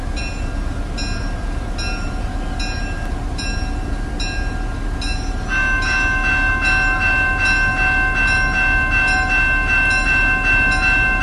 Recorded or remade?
recorded